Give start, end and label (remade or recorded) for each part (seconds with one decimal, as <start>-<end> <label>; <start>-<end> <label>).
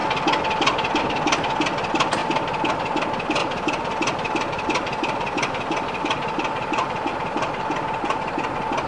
0.0-3.4 recorded; 3.4-7.1 remade; 7.1-8.9 recorded